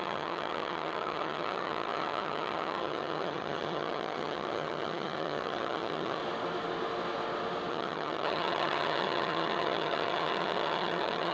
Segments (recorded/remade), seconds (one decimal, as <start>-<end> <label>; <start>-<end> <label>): 0.0-6.2 remade; 6.2-7.7 recorded; 7.7-11.3 remade

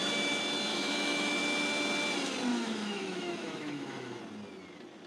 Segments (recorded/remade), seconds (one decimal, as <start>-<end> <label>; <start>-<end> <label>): 0.0-0.7 recorded; 0.7-1.4 remade; 1.4-2.5 recorded; 2.5-4.2 remade; 4.2-5.1 recorded

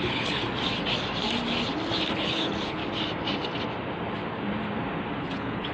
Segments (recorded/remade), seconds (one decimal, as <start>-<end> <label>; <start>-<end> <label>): 0.0-0.4 remade; 0.4-2.1 recorded; 2.1-2.8 remade; 2.8-5.2 recorded; 5.2-5.7 remade

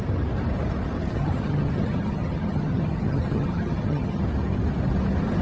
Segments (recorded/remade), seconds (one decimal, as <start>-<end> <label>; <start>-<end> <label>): 0.0-1.0 recorded; 1.0-4.2 remade; 4.2-5.4 recorded

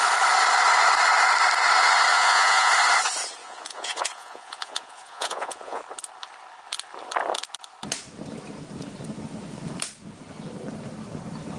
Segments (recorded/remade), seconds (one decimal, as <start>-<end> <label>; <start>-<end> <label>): 0.0-2.1 recorded; 2.1-2.7 remade; 2.7-3.4 recorded; 3.4-5.8 remade; 5.8-11.6 recorded

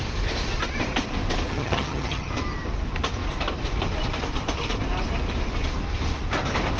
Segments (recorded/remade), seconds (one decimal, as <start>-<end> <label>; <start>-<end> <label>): 0.0-1.5 recorded; 1.5-2.3 remade; 2.3-6.8 recorded